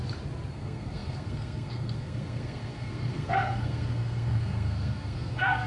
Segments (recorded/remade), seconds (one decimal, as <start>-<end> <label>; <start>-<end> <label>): 0.0-0.5 recorded; 0.5-5.7 remade